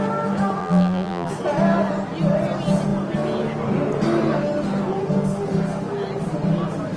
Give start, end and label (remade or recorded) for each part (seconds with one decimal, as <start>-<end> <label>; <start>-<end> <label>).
0.0-0.6 recorded; 0.6-1.3 remade; 1.3-7.0 recorded